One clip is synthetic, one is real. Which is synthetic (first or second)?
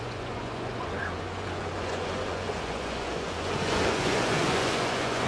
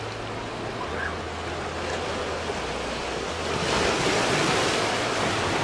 first